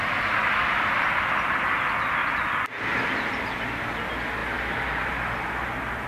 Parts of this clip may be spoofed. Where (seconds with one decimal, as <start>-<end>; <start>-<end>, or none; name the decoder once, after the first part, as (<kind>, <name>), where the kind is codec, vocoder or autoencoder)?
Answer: 0.4-1.0 (vocoder, BigVGAN v2); 4.4-5.1